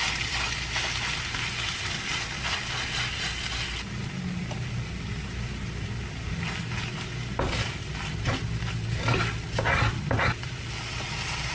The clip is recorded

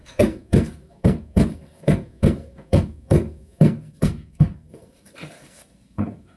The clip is remade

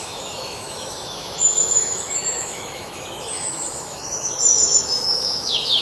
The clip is remade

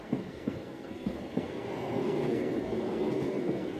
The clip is remade